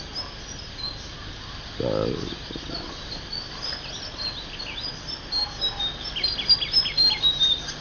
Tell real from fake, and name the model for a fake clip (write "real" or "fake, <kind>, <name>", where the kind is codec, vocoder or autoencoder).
real